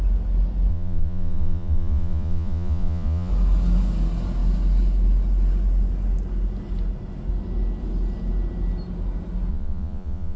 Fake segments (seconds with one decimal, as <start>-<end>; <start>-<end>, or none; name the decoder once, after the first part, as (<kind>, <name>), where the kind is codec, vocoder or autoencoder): 0.7-3.3 (vocoder, Vocos); 9.5-10.4